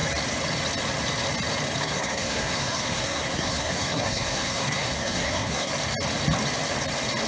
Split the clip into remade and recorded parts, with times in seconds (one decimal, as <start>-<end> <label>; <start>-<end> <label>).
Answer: 0.0-1.8 recorded; 1.8-5.7 remade; 5.7-7.3 recorded